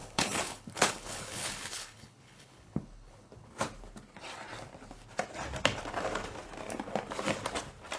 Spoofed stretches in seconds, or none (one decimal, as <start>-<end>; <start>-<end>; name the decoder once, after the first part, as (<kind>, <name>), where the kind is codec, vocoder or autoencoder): 0.0-3.5 (codec, HILCodec)